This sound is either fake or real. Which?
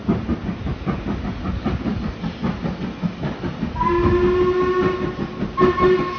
real